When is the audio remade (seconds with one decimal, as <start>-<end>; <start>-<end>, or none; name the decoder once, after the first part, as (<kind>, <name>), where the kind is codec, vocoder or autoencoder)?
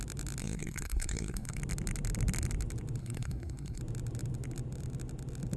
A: 0.4-1.6 (codec, SNAC); 3.0-3.8